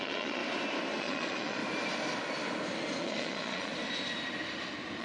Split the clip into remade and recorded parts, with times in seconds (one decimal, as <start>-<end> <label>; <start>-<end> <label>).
0.0-0.4 remade; 0.4-1.0 recorded; 1.0-1.6 remade; 1.6-3.0 recorded; 3.0-3.7 remade; 3.7-5.0 recorded